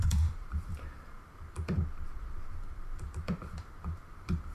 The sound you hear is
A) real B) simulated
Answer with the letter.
B